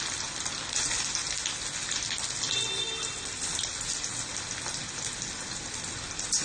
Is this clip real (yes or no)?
yes